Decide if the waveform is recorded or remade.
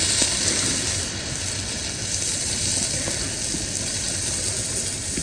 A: recorded